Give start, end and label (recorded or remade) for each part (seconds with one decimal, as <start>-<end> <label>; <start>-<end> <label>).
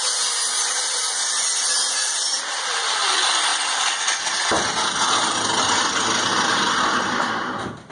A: 0.0-7.9 recorded